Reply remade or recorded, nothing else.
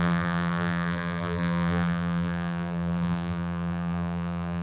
remade